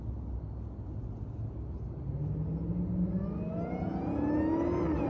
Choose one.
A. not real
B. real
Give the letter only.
B